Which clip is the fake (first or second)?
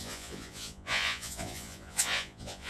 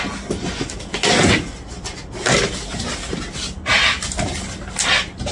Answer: first